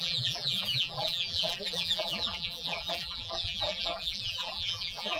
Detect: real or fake fake